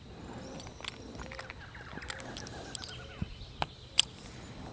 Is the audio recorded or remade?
recorded